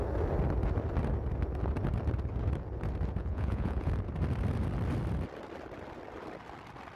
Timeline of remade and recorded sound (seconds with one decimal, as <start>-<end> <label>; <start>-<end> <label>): 0.0-3.2 recorded; 3.2-3.9 remade; 3.9-7.0 recorded